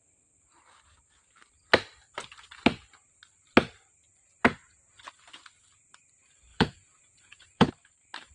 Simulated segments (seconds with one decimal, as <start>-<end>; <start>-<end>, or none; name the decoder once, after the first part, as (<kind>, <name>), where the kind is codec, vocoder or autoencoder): 4.4-5.0 (vocoder, Vocos); 6.5-7.7